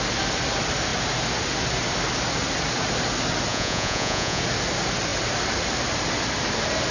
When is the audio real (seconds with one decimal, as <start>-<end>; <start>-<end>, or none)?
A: 0.0-3.5; 4.4-6.9